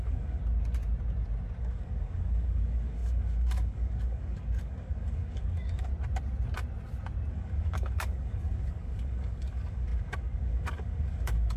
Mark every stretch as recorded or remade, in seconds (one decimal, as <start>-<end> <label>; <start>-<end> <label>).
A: 0.0-0.4 remade; 0.4-1.6 recorded; 1.6-5.9 remade; 5.9-7.3 recorded; 7.3-11.6 remade

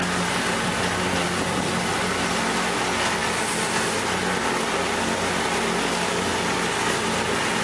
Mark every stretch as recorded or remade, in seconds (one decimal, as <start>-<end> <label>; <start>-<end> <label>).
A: 0.0-7.6 recorded

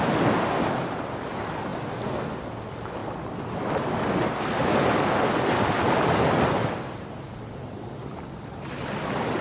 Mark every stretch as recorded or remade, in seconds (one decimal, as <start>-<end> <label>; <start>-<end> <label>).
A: 0.0-9.4 recorded

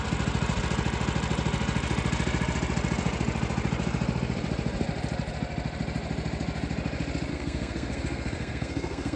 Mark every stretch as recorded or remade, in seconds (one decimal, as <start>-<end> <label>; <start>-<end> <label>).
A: 0.0-7.3 recorded; 7.3-9.2 remade

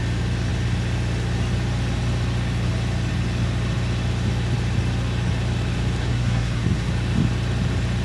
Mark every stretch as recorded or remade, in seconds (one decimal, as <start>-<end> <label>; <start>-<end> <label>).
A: 0.0-6.0 recorded; 6.0-6.9 remade; 6.9-8.0 recorded

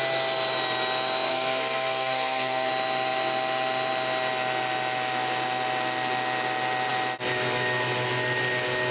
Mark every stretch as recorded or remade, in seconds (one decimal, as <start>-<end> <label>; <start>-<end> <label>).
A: 0.0-1.3 recorded; 1.3-2.7 remade; 2.7-8.9 recorded

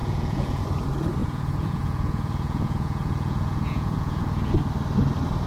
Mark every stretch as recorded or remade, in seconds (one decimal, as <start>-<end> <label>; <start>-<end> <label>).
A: 0.0-0.6 remade; 0.6-1.2 recorded; 1.2-4.5 remade; 4.5-5.5 recorded